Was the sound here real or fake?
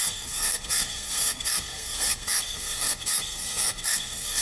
fake